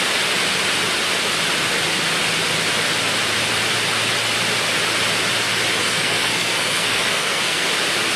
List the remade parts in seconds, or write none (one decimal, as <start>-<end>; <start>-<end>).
5.8-7.7